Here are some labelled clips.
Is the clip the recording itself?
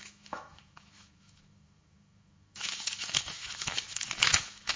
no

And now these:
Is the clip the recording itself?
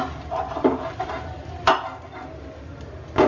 yes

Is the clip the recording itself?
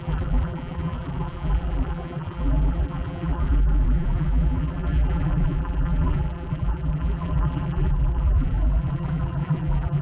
no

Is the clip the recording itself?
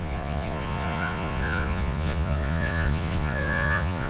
no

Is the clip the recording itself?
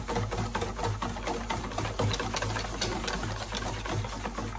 yes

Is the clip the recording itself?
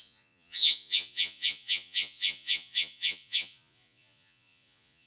no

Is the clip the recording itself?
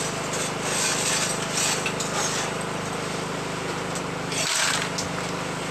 yes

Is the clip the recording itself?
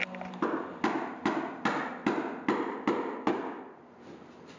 yes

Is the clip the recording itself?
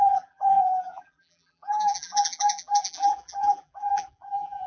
no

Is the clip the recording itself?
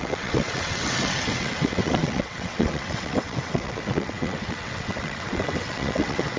no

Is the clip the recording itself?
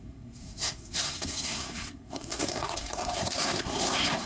no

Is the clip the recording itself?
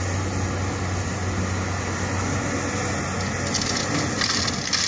yes